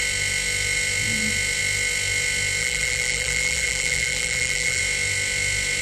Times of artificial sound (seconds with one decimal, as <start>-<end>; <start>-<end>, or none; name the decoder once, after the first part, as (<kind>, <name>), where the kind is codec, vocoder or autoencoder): 2.6-4.8 (vocoder, BigVGAN v2)